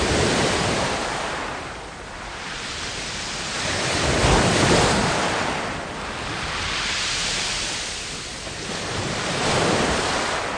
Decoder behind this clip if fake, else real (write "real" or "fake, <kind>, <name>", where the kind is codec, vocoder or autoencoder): fake, vocoder, BigVGAN v2